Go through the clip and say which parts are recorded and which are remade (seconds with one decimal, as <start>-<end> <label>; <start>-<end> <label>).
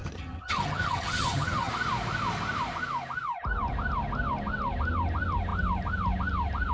0.0-1.7 remade; 1.7-6.7 recorded